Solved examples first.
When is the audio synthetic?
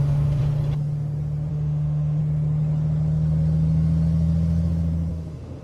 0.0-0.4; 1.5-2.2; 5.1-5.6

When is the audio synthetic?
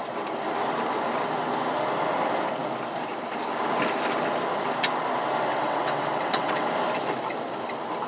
5.5-6.7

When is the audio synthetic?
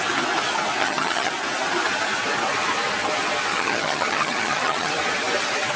0.8-1.3; 3.5-4.9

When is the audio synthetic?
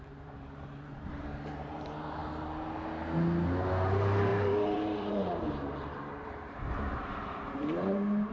0.0-2.2; 3.9-8.3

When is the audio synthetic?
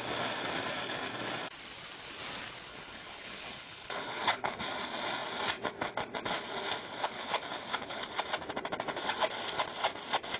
2.7-4.6; 7.0-8.1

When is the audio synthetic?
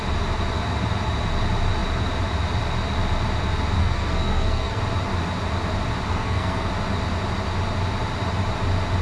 3.8-4.8; 6.1-6.7